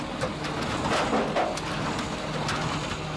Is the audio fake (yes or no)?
no